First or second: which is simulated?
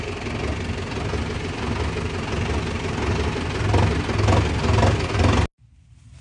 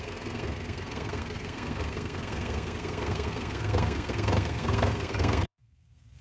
second